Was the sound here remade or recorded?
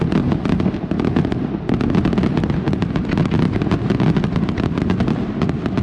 recorded